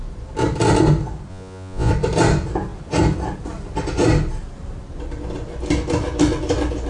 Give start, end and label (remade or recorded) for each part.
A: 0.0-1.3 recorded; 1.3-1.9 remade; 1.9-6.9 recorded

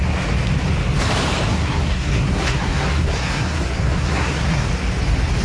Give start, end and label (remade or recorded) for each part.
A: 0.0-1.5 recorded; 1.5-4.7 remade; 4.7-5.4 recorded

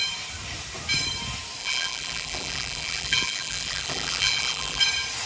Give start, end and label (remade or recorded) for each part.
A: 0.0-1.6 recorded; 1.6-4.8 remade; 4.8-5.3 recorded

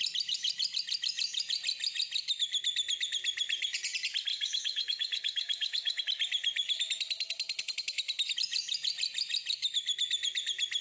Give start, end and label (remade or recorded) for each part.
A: 0.0-4.3 recorded; 4.3-6.0 remade; 6.0-10.8 recorded